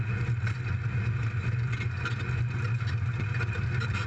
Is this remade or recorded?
recorded